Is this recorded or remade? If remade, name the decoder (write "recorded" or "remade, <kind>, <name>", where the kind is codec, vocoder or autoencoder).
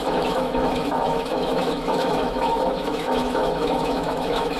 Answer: remade, autoencoder, DAC-VAE